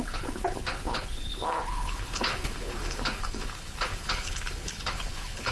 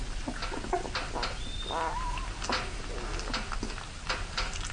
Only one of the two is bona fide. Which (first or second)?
second